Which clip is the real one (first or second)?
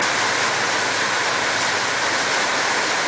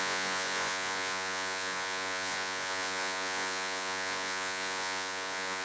first